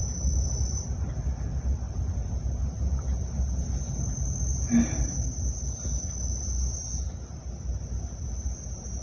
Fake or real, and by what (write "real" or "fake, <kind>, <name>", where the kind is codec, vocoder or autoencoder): real